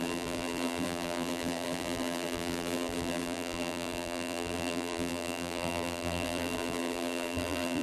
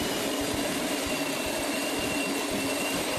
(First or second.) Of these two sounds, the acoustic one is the second